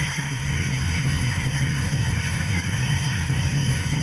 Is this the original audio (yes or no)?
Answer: no